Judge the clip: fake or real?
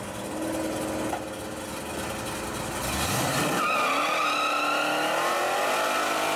real